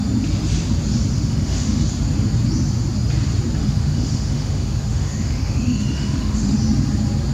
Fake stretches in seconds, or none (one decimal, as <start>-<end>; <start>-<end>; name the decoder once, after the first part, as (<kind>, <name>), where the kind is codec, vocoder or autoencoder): 1.1-1.9 (autoencoder, DAC-VAE); 3.6-6.6